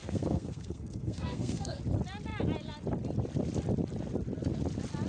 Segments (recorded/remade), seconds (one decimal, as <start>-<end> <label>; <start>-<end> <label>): 0.0-1.8 remade; 1.8-5.1 recorded